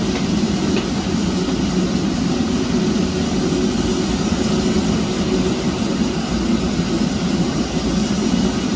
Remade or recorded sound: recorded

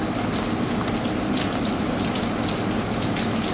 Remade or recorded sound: recorded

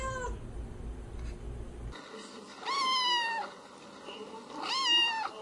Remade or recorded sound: recorded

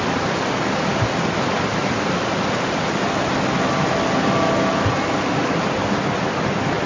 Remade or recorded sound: recorded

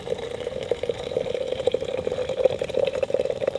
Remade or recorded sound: remade